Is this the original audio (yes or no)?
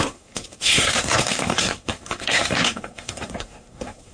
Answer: no